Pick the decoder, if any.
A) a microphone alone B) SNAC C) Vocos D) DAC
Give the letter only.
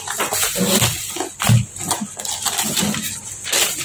A